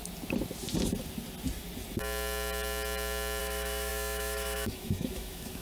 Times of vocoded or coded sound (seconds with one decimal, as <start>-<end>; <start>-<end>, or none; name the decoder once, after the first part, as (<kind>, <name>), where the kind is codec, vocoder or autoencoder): 3.4-5.6 (autoencoder, DAC-VAE)